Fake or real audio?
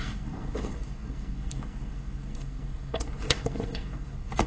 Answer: fake